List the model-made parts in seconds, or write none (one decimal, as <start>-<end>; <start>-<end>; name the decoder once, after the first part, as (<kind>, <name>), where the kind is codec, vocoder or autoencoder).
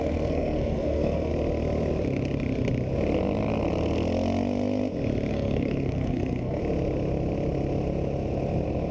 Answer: 0.0-1.3 (codec, SNAC); 5.3-6.6